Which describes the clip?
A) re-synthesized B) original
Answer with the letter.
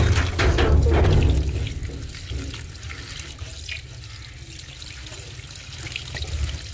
B